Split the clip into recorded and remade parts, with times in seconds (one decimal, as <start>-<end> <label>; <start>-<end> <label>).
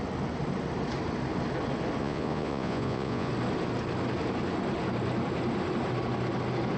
0.0-2.0 recorded; 2.0-3.3 remade; 3.3-6.8 recorded